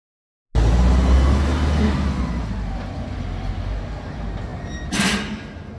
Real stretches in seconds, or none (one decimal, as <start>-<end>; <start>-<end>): 0.0-5.8